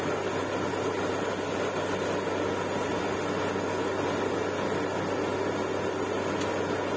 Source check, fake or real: real